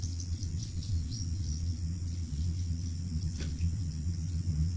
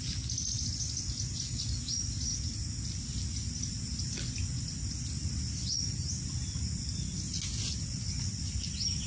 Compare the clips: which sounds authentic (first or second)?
second